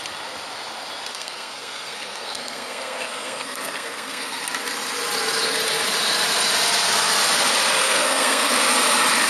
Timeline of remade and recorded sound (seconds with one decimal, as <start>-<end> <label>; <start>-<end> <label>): 0.0-1.1 recorded; 1.1-4.4 remade; 4.4-7.8 recorded; 7.8-8.5 remade; 8.5-9.3 recorded